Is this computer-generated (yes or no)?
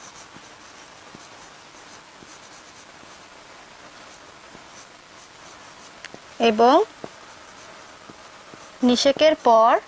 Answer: no